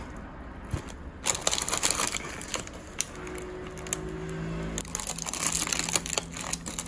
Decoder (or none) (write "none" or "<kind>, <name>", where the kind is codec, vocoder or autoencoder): none